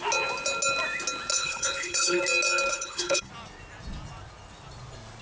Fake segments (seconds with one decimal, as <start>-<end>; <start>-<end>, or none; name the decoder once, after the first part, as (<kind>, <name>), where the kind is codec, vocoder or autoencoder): 1.3-2.2 (codec, HILCodec); 2.7-3.3